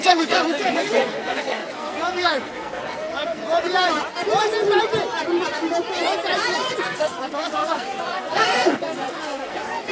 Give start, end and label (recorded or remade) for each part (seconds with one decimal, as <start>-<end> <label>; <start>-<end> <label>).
0.0-3.4 remade; 3.4-6.8 recorded; 6.8-9.9 remade